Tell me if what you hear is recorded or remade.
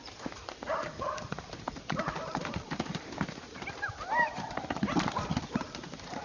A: remade